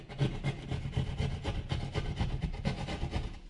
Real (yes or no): yes